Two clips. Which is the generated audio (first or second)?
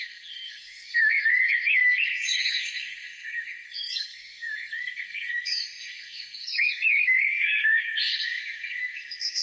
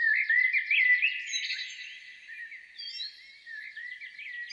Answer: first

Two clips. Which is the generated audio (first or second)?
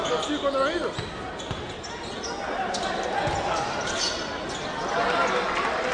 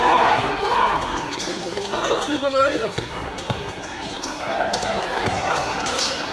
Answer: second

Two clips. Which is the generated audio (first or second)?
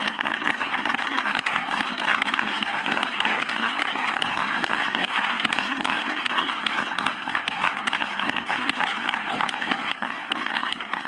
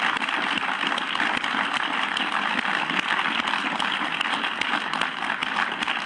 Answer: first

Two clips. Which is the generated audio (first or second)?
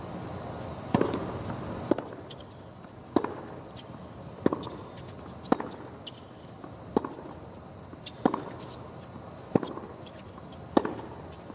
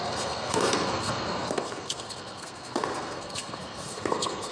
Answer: second